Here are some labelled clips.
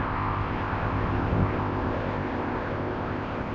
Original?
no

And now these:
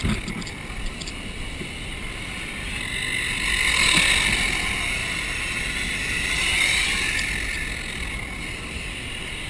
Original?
yes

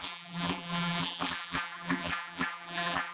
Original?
no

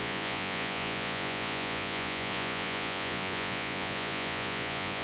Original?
no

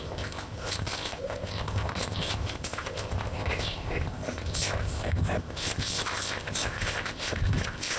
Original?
no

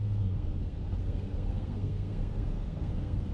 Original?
no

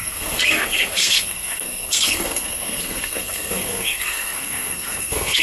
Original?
no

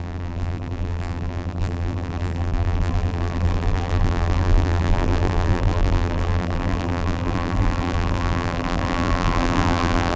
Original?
no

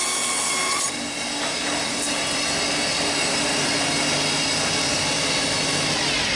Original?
yes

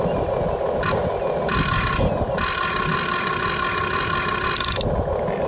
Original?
yes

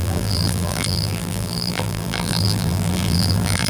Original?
no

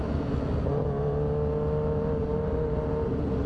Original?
yes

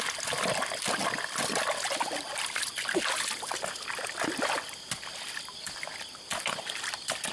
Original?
yes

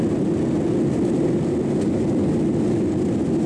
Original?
yes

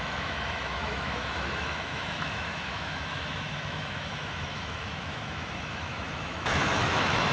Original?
no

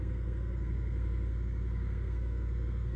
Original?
no